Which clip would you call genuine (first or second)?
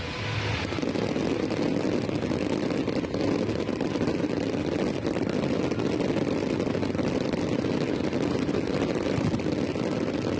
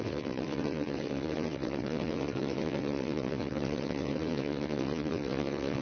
first